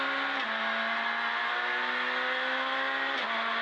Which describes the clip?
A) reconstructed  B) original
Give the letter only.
B